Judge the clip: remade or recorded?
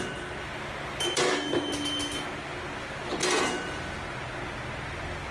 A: recorded